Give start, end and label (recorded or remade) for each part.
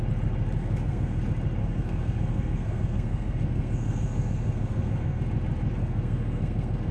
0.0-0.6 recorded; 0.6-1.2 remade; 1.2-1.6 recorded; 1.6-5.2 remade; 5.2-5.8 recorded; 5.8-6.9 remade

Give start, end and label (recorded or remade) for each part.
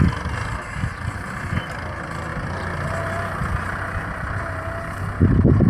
0.0-5.7 recorded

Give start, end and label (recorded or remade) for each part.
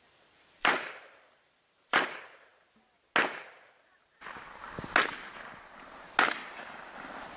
0.0-2.5 remade; 2.5-6.6 recorded; 6.6-7.4 remade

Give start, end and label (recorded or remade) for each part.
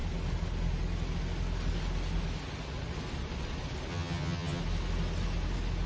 0.0-3.9 recorded; 3.9-4.6 remade; 4.6-5.9 recorded